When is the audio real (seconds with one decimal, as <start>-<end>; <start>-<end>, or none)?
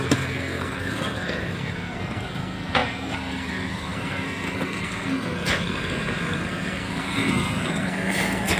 none